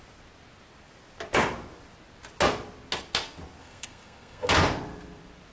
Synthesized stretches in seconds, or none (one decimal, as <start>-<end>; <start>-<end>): 3.6-4.5